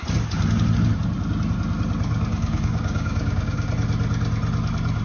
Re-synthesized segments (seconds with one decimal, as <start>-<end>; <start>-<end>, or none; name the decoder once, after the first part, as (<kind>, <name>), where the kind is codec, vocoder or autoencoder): 2.3-3.7 (codec, DAC)